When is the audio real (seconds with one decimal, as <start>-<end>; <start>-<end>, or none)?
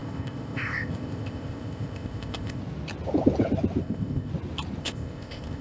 2.6-3.8; 4.3-4.8